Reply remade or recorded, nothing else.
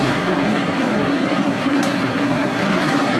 remade